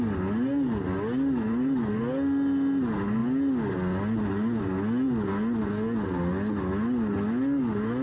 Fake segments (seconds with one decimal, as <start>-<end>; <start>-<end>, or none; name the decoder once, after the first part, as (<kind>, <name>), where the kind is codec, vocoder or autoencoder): none